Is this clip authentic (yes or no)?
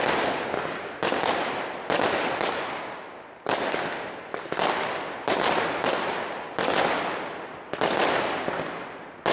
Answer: yes